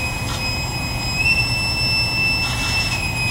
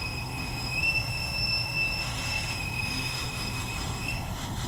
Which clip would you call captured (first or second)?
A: first